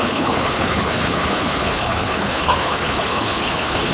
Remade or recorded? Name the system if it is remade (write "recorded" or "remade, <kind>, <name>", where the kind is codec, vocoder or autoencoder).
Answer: remade, codec, HILCodec